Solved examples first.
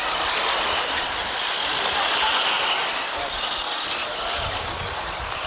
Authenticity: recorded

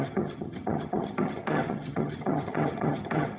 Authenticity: remade